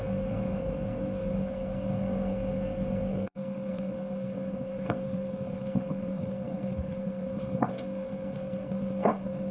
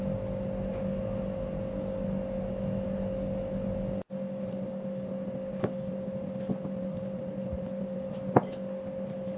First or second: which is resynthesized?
first